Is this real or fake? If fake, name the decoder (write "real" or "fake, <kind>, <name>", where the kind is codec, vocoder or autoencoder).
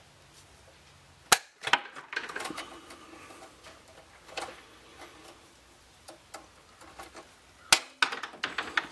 real